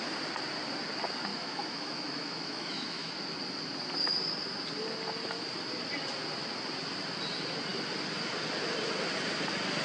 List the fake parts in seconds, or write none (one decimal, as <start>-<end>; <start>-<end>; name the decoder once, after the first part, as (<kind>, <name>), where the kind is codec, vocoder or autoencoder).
1.3-3.1 (autoencoder, DAC-VAE)